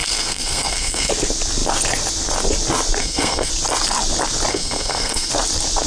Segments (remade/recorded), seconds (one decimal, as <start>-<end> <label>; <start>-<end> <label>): 0.0-1.1 remade; 1.1-3.0 recorded; 3.0-3.5 remade; 3.5-4.5 recorded; 4.5-5.3 remade; 5.3-5.9 recorded